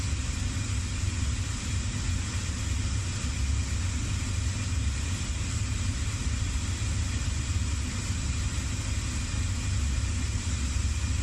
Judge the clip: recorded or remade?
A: recorded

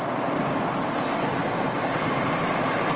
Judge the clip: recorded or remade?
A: remade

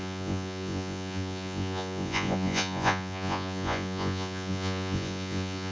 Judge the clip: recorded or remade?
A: remade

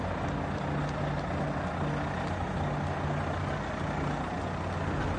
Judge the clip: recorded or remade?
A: recorded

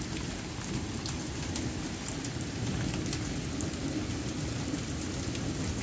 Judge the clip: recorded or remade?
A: recorded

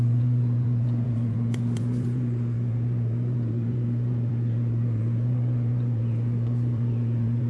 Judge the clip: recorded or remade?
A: remade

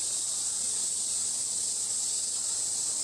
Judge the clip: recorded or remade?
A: recorded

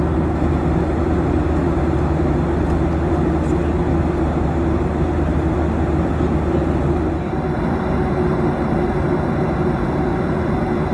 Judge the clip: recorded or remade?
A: recorded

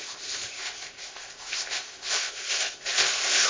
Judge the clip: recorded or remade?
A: remade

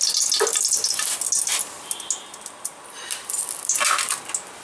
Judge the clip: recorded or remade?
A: recorded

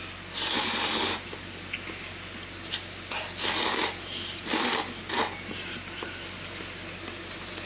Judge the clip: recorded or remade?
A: recorded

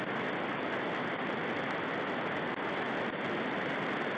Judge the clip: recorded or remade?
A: recorded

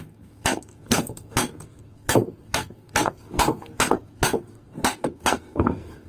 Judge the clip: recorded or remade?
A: remade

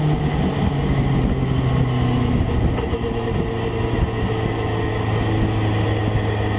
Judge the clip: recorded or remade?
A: recorded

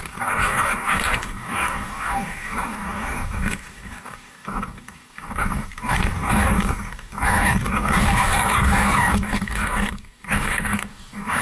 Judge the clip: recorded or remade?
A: remade